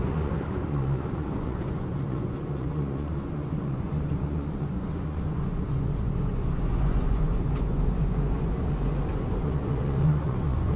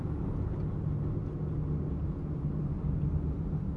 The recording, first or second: second